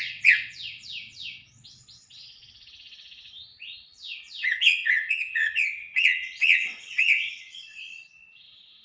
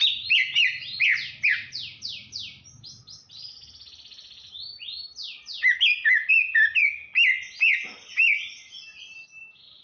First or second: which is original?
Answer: second